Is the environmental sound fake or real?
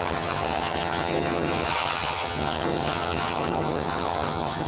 fake